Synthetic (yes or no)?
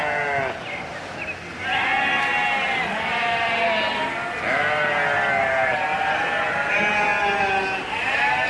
no